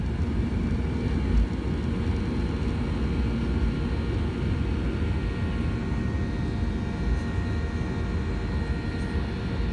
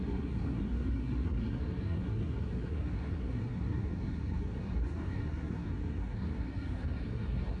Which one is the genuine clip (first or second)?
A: first